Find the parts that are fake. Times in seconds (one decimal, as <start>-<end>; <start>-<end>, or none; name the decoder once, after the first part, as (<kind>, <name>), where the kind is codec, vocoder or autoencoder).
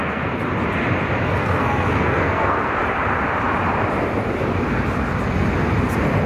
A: 0.0-0.4 (codec, SNAC); 1.4-2.8